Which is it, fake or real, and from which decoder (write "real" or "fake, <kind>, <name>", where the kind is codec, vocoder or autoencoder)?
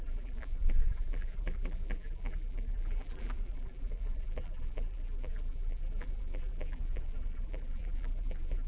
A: fake, vocoder, BigVGAN v2